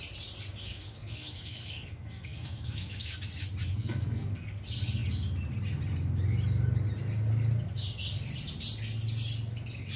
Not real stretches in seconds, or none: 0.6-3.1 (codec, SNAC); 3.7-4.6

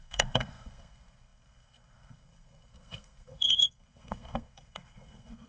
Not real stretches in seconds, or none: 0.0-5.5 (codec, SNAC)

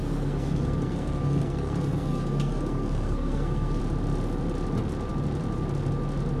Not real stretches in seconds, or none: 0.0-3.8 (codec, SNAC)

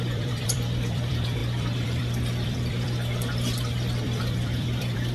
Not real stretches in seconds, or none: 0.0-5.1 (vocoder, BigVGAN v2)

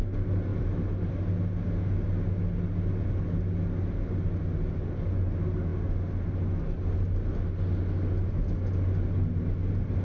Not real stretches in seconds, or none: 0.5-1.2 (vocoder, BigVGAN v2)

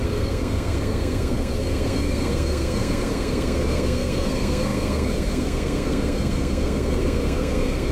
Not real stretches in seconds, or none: 0.0-7.9 (codec, SNAC)

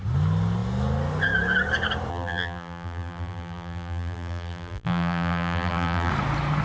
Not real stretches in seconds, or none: 2.1-6.1 (vocoder, BigVGAN v2)